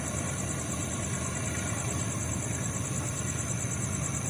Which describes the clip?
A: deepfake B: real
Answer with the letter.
B